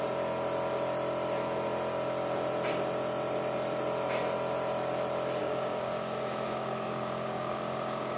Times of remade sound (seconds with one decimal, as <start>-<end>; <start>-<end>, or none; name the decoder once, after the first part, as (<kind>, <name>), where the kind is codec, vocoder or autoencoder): 5.4-8.2 (codec, DAC)